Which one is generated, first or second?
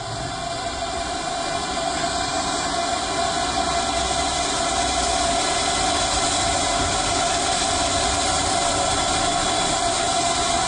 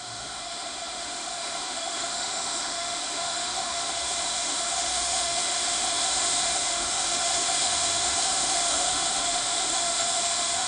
second